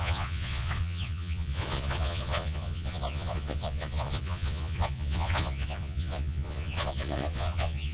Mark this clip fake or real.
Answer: fake